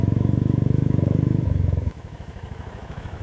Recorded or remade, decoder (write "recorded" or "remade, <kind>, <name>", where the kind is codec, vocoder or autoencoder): remade, autoencoder, DAC-VAE